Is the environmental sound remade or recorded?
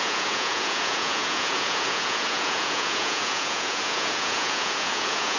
remade